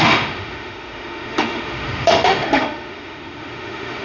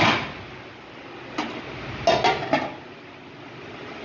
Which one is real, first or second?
second